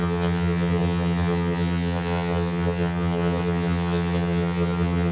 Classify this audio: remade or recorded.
remade